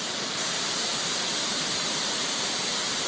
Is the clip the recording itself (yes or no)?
no